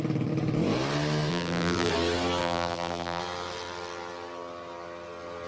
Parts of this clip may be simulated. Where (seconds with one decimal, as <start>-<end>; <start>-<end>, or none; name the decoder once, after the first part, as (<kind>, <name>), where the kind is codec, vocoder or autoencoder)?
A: 1.3-1.9 (vocoder, BigVGAN v2); 2.4-3.2